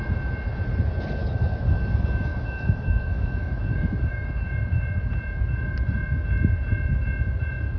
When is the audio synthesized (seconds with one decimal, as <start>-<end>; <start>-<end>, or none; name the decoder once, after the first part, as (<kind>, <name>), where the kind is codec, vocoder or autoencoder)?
1.2-1.8 (autoencoder, DAC-VAE); 2.3-4.6